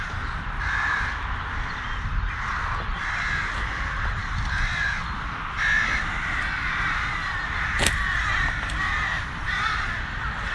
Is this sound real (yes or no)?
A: yes